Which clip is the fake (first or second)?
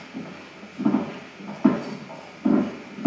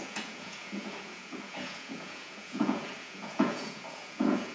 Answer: second